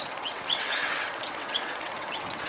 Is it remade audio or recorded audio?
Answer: remade